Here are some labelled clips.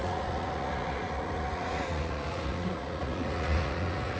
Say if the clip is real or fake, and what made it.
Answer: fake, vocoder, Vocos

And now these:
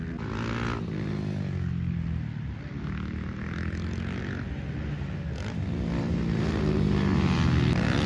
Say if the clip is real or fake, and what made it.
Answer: real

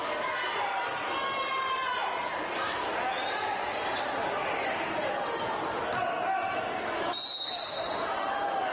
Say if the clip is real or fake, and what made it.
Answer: real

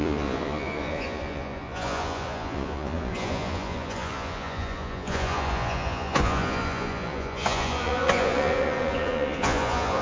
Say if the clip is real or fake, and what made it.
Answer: fake, vocoder, Vocos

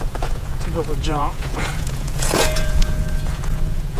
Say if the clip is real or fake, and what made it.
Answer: fake, vocoder, Vocos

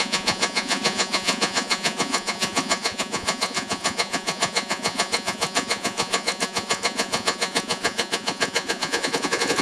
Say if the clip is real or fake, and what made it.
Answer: fake, vocoder, Vocos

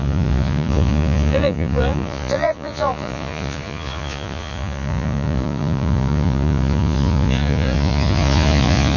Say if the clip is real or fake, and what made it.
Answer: fake, vocoder, Vocos